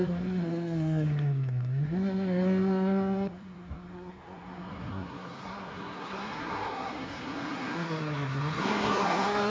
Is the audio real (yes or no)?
no